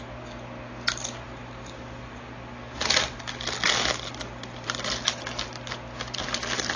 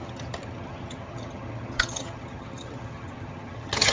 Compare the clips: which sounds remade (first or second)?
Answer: second